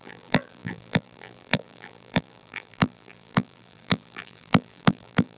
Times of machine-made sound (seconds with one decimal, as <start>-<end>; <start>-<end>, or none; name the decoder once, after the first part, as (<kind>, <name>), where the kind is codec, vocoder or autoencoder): 0.0-5.4 (vocoder, BigVGAN v2)